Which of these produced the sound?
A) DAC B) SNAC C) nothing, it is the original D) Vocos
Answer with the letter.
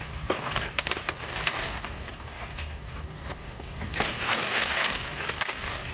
A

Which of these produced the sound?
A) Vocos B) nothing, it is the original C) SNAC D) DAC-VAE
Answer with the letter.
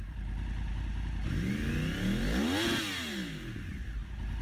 B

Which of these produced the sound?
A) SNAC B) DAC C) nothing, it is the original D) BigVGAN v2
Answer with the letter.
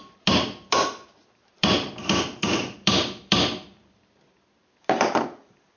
D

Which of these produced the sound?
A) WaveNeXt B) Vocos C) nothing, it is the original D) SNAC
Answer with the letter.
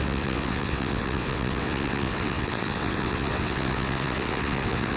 A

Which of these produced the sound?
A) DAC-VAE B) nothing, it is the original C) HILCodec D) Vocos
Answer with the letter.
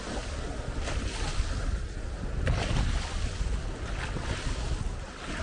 B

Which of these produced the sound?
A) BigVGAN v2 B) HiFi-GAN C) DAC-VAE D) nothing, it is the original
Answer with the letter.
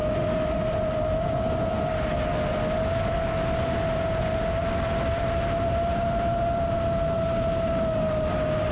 D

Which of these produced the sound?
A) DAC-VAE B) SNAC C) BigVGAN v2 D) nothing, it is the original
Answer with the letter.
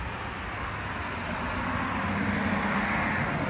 D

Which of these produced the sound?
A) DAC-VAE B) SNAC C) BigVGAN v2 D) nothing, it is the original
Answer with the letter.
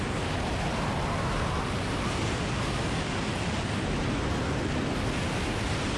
D